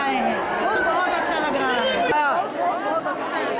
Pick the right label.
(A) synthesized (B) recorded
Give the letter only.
B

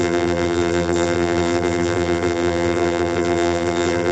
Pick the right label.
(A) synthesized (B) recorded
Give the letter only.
A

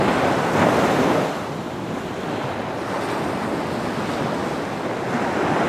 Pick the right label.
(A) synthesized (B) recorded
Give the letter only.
B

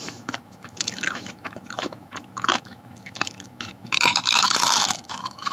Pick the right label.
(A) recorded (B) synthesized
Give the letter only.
B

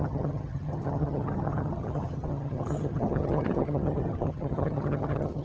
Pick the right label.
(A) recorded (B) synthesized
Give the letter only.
B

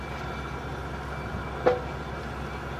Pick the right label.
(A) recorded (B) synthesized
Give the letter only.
A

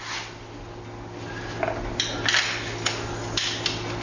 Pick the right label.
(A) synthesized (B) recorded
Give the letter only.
B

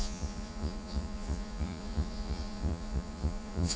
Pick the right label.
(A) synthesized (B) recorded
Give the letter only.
A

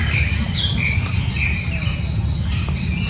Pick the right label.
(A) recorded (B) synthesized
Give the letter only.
A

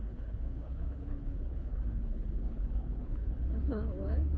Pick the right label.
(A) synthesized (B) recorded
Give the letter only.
A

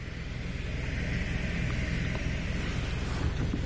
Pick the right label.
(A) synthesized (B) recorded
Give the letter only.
B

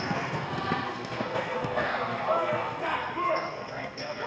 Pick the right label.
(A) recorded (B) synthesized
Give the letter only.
B